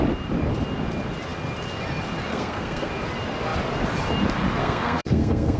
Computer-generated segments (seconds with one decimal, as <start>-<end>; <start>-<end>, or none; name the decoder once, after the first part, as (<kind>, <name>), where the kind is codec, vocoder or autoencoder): 2.3-2.9 (codec, SNAC); 4.6-5.6